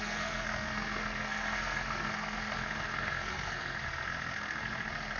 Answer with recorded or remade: remade